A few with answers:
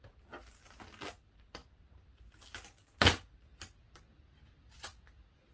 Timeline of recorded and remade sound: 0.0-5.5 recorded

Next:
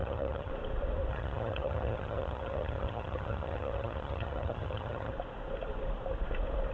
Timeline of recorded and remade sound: 0.0-0.5 remade; 0.5-1.1 recorded; 1.1-5.1 remade; 5.1-6.7 recorded

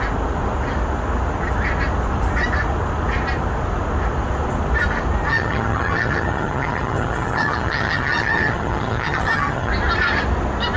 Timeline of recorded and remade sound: 0.0-5.3 recorded; 5.3-9.7 remade; 9.7-10.8 recorded

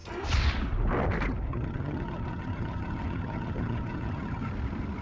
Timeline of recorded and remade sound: 0.0-1.5 recorded; 1.5-4.5 remade; 4.5-5.0 recorded

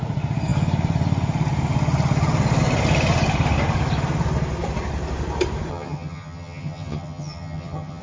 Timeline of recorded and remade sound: 0.0-5.7 recorded; 5.7-8.0 remade

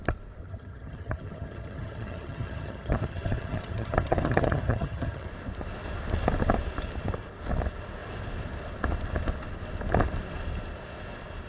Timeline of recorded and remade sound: 0.0-0.4 recorded; 0.4-5.3 remade; 5.3-11.5 recorded

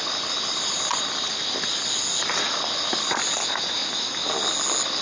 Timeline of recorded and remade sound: 0.0-5.0 recorded